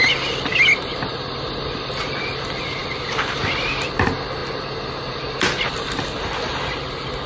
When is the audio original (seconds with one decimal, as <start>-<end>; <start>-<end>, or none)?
0.0-7.3